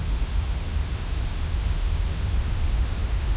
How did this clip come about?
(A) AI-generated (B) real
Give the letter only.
A